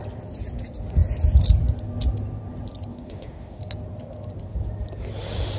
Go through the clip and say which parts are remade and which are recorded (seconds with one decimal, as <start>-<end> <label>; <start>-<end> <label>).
0.0-2.9 recorded; 2.9-3.6 remade; 3.6-5.6 recorded